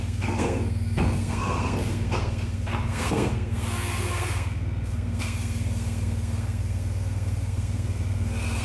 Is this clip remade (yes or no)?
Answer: yes